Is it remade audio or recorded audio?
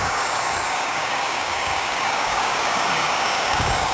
remade